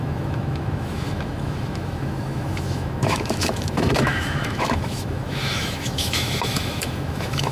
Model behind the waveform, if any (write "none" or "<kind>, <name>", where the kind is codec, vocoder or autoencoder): autoencoder, DAC-VAE